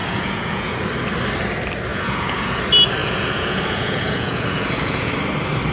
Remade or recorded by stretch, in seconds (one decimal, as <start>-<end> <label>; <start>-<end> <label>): 0.0-0.8 remade; 0.8-1.9 recorded; 1.9-2.6 remade; 2.6-3.0 recorded; 3.0-5.1 remade; 5.1-5.7 recorded

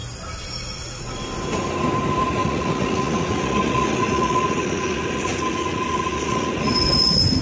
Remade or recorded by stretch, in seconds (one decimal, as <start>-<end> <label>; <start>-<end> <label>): 0.0-2.4 recorded; 2.4-6.7 remade; 6.7-7.4 recorded

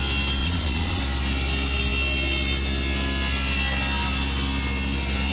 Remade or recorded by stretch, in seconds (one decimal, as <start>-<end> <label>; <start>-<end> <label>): 0.0-0.4 recorded; 0.4-1.0 remade; 1.0-5.3 recorded

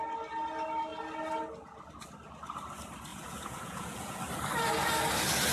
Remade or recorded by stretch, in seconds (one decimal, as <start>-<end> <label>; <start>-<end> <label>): 0.0-3.1 recorded; 3.1-4.2 remade; 4.2-5.5 recorded

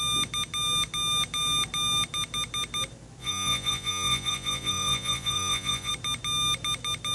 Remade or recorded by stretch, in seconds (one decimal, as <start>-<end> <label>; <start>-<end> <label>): 0.0-3.2 recorded; 3.2-5.9 remade; 5.9-7.1 recorded